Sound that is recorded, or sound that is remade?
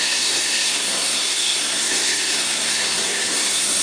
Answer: remade